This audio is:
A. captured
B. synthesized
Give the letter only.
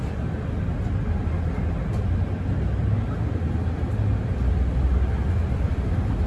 A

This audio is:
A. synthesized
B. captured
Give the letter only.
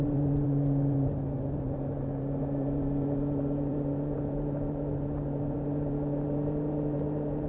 A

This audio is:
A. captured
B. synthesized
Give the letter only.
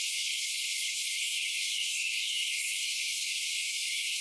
B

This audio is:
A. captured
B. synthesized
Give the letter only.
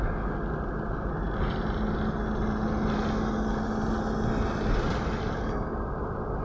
A